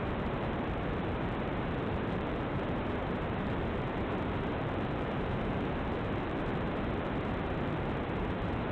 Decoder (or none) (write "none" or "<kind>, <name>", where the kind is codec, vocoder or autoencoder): vocoder, BigVGAN v2